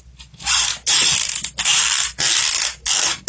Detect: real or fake real